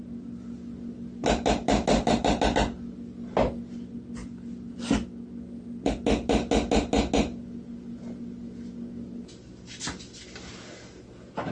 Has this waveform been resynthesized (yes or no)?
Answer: no